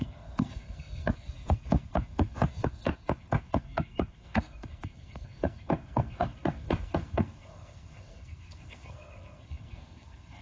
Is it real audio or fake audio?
fake